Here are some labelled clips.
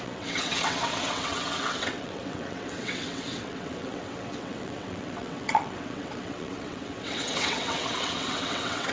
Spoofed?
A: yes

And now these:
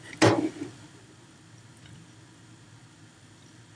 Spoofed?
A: no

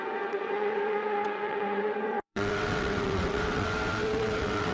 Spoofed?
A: yes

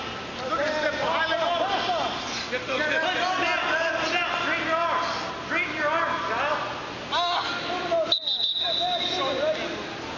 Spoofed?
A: no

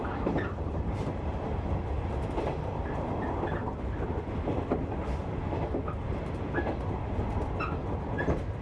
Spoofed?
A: no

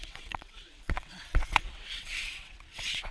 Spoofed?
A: yes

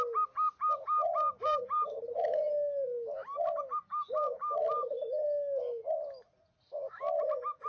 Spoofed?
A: no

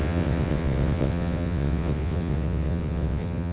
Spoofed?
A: yes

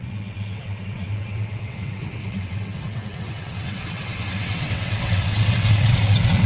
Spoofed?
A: yes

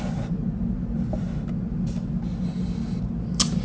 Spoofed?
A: no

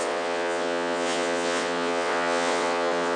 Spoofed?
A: yes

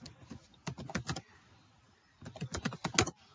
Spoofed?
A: no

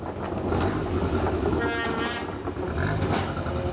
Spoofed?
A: no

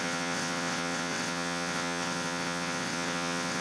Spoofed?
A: yes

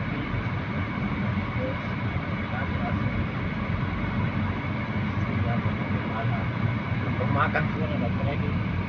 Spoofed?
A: no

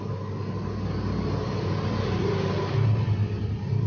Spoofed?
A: no